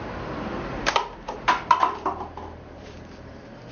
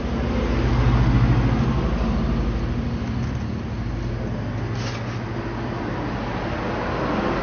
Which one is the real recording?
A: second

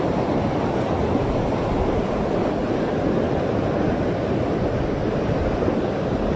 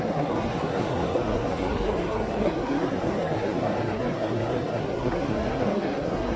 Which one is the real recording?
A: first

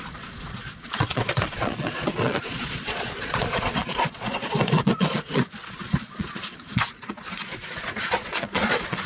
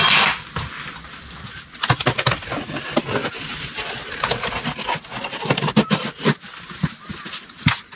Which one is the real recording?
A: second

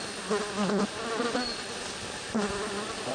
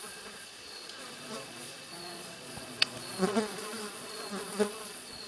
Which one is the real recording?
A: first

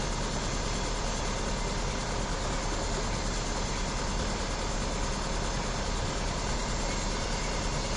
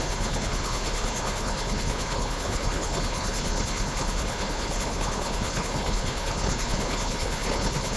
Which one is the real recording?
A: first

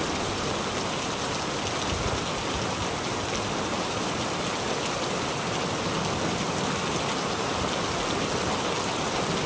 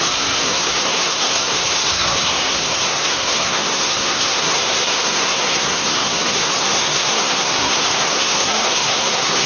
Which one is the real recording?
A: first